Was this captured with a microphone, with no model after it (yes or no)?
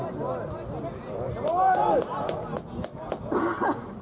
yes